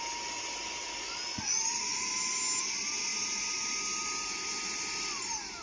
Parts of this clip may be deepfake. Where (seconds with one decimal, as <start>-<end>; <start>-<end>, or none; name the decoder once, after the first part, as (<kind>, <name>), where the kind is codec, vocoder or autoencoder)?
1.3-2.1 (vocoder, Vocos)